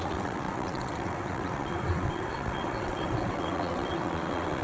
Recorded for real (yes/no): no